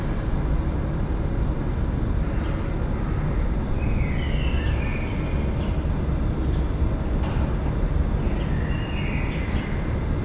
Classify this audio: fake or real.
real